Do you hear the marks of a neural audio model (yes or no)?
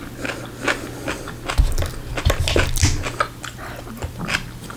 no